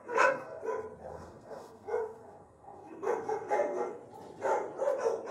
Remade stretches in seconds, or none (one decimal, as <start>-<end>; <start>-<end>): 0.0-0.6; 1.1-4.0